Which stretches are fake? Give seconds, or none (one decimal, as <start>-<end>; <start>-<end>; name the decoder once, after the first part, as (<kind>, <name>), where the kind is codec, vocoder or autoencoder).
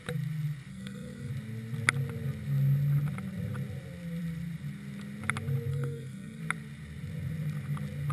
0.7-1.3 (codec, SNAC); 5.7-6.4